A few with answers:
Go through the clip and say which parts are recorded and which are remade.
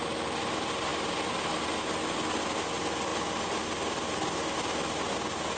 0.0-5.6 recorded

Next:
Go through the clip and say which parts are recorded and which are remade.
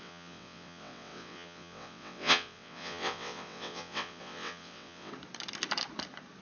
0.0-5.1 remade; 5.1-6.4 recorded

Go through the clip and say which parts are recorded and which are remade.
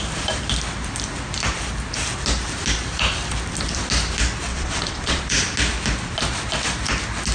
0.0-4.5 recorded; 4.5-5.2 remade; 5.2-7.3 recorded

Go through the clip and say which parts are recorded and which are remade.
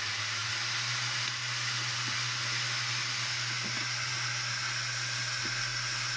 0.0-6.2 recorded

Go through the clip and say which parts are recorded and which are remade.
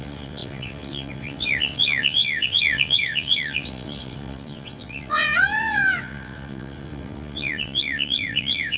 0.0-8.8 remade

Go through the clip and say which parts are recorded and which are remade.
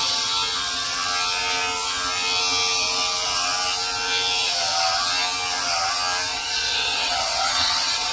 0.0-6.3 recorded; 6.3-8.1 remade